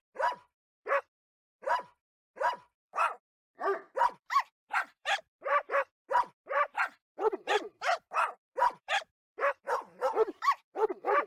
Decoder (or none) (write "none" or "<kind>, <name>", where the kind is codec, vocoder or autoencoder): vocoder, BigVGAN v2